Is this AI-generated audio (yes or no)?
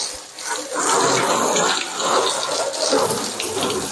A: no